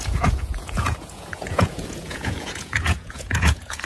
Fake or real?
fake